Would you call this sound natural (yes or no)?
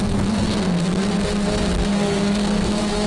no